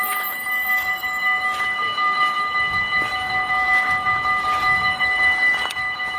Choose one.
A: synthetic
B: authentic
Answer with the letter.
A